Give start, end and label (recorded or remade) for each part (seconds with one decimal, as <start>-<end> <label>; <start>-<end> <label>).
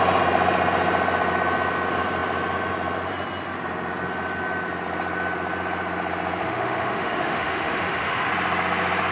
0.0-6.4 recorded; 6.4-8.3 remade; 8.3-9.1 recorded